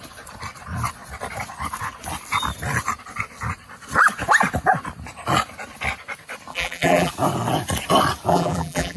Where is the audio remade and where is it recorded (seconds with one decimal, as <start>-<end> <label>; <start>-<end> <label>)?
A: 0.0-6.5 recorded; 6.5-7.1 remade; 7.1-8.3 recorded; 8.3-9.0 remade